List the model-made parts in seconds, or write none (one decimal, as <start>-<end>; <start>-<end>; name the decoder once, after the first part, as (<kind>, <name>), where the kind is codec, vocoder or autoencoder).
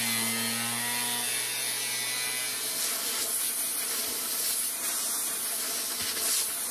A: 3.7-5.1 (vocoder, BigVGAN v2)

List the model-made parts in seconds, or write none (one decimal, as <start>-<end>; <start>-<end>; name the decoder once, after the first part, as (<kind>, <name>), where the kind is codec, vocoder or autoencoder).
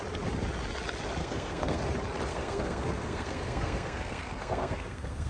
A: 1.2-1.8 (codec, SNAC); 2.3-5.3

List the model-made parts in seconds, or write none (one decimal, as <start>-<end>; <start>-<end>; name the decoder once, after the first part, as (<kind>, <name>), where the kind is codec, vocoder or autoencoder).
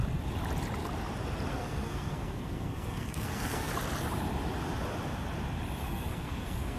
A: 1.5-3.7 (codec, SNAC); 5.8-6.8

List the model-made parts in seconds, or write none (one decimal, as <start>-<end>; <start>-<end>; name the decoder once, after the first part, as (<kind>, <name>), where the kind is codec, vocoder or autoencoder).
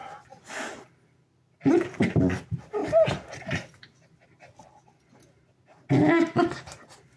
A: none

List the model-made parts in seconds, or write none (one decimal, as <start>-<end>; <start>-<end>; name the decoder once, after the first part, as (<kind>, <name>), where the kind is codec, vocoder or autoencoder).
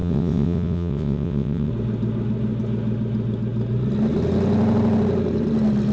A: 0.0-1.7 (vocoder, WaveNeXt)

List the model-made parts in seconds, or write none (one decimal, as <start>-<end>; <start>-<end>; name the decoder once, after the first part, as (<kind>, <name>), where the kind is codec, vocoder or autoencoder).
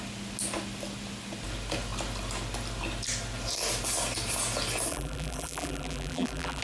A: 4.9-6.6 (vocoder, BigVGAN v2)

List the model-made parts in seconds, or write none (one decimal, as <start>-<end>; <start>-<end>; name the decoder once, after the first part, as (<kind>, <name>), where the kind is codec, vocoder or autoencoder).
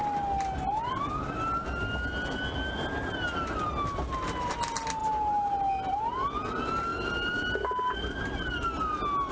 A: none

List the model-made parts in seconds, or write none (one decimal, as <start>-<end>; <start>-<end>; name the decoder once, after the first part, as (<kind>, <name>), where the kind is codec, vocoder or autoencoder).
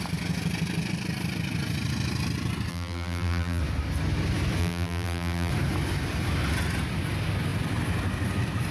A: 2.7-3.6 (vocoder, BigVGAN v2); 4.6-5.5